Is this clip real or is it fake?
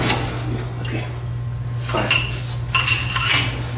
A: real